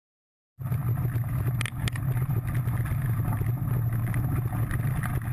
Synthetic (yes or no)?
no